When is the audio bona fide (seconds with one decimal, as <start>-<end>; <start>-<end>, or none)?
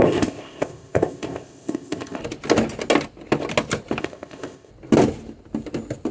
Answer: 2.2-4.0; 4.7-6.1